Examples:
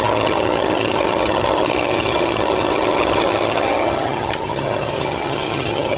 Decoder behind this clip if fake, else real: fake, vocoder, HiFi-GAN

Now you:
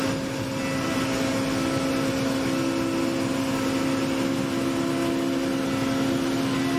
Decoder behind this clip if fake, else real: real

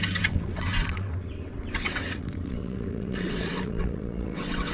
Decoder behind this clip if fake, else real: fake, vocoder, WaveNeXt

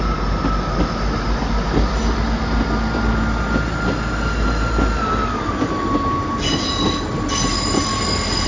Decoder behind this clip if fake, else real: real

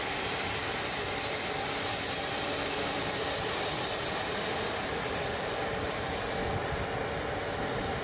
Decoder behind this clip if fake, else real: real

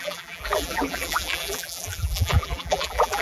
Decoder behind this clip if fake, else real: fake, vocoder, BigVGAN v2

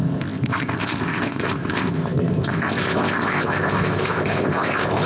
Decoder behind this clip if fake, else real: fake, codec, ZipCodec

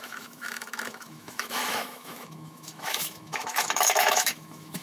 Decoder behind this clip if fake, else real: fake, autoencoder, DAC-VAE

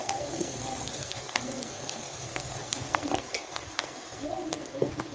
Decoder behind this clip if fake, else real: fake, codec, SNAC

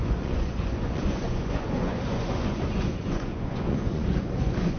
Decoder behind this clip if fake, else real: fake, vocoder, Vocos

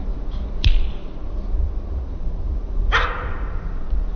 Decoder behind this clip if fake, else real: real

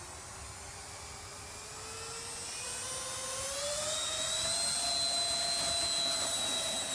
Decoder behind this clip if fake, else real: real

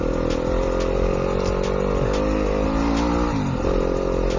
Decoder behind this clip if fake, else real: real